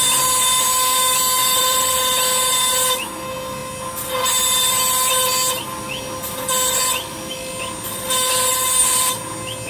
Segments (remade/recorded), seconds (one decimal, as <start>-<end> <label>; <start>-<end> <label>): 0.0-1.4 recorded; 1.4-2.0 remade; 2.0-8.5 recorded; 8.5-9.1 remade; 9.1-9.7 recorded